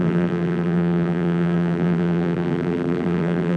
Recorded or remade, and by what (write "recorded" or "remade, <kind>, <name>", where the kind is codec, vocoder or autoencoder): remade, vocoder, BigVGAN v2